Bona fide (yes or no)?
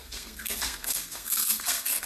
no